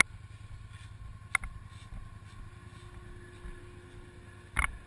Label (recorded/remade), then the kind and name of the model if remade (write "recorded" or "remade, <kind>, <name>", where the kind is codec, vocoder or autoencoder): recorded